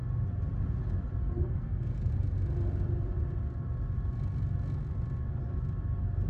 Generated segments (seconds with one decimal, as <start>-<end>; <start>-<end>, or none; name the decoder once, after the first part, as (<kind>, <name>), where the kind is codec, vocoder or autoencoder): 1.2-2.1 (codec, SNAC)